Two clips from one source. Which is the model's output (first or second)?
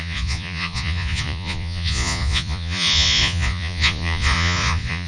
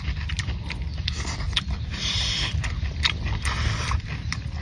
first